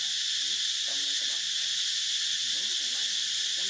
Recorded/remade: recorded